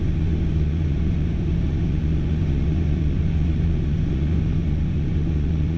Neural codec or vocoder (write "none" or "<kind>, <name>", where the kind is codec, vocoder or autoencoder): vocoder, Vocos